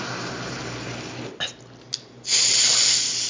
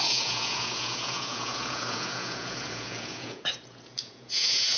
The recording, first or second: first